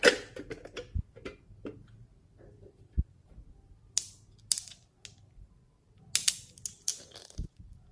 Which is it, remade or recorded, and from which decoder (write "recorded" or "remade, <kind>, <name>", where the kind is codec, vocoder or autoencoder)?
recorded